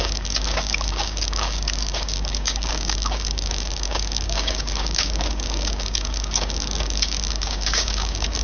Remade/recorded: remade